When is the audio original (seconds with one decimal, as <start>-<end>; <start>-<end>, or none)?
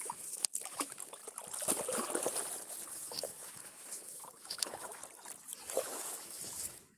1.2-2.9; 5.0-5.6